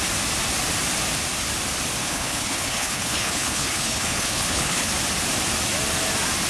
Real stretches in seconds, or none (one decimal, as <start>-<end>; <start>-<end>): 0.0-2.0; 4.9-6.5